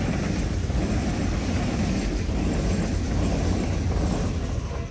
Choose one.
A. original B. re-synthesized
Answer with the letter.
A